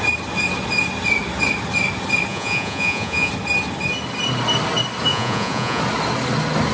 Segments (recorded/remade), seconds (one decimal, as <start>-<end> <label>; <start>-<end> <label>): 0.0-2.3 recorded; 2.3-3.3 remade; 3.3-5.1 recorded; 5.1-5.8 remade; 5.8-6.7 recorded